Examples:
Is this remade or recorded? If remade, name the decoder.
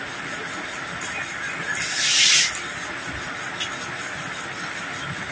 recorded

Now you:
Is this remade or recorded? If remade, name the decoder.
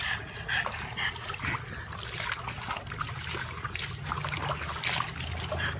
recorded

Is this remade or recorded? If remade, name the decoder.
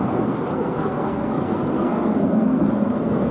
remade, codec, SNAC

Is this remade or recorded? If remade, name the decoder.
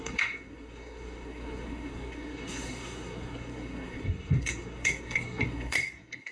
remade, codec, SNAC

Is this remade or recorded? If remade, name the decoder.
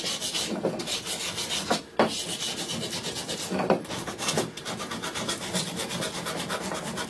recorded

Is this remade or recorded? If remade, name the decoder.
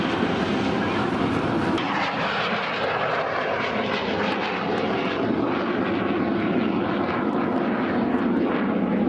recorded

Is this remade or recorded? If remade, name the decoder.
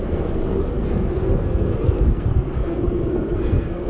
remade, codec, SNAC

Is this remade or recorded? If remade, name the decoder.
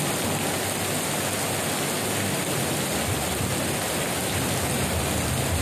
recorded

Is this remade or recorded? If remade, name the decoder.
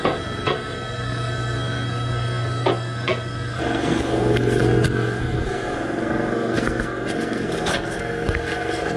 remade, codec, SNAC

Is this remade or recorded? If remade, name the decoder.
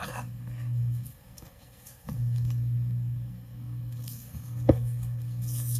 remade, codec, SNAC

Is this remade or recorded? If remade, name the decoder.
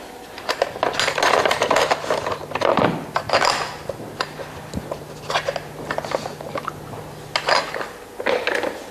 recorded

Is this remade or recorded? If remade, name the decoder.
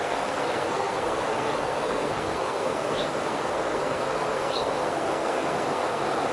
remade, codec, SNAC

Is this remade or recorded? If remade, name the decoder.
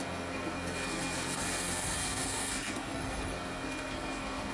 remade, codec, SNAC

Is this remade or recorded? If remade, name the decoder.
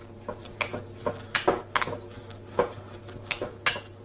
recorded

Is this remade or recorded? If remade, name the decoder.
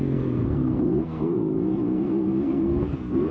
remade, codec, SNAC